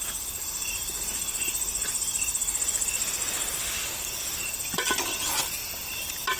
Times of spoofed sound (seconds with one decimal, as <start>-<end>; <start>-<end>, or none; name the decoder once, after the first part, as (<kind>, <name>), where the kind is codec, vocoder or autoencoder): none